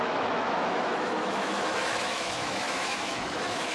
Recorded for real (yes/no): no